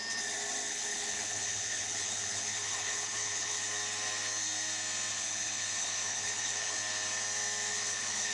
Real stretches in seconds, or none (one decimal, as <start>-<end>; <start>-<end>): 0.0-0.7; 3.6-5.1; 6.8-7.7